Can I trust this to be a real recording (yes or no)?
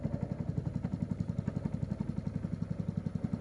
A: yes